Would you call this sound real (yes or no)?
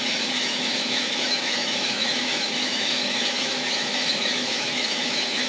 no